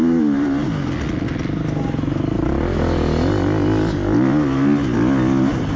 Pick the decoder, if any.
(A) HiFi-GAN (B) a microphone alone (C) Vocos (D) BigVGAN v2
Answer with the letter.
B